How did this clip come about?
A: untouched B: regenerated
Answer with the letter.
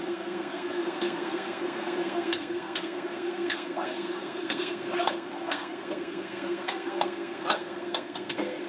B